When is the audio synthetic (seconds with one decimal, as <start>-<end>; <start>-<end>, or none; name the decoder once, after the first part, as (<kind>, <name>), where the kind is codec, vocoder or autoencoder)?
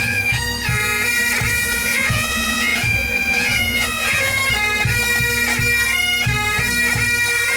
0.0-0.4 (vocoder, Vocos); 1.5-4.4